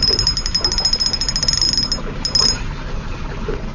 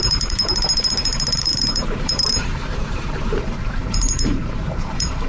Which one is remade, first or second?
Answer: second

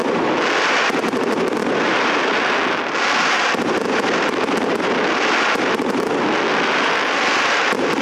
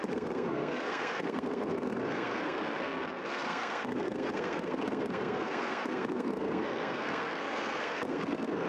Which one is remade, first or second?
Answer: second